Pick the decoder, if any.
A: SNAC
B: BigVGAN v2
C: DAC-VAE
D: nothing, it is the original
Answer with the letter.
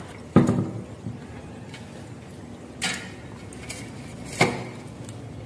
D